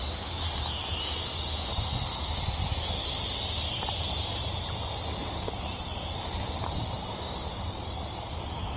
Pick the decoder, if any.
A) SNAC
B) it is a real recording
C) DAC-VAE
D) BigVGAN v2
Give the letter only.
D